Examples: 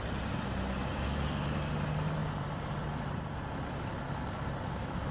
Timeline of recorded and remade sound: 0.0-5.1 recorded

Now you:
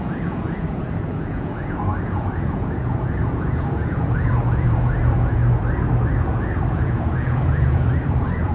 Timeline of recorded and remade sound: 0.0-5.4 remade; 5.4-6.3 recorded; 6.3-8.5 remade

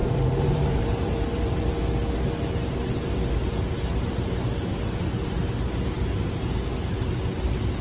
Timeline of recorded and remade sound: 0.0-1.7 remade; 1.7-3.0 recorded; 3.0-4.5 remade; 4.5-7.8 recorded